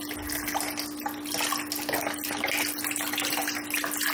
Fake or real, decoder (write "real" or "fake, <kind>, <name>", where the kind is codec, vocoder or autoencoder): real